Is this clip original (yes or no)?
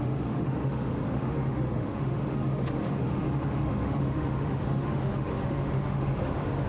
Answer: no